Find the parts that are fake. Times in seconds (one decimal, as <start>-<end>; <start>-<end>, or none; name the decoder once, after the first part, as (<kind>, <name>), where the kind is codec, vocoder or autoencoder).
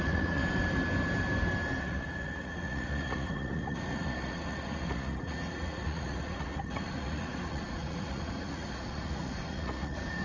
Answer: 0.0-0.4 (vocoder, Vocos); 1.8-10.2